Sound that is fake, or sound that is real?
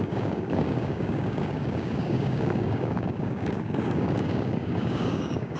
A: fake